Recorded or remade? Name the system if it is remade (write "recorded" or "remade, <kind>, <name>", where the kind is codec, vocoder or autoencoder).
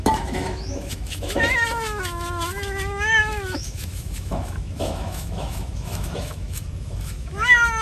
remade, autoencoder, DAC-VAE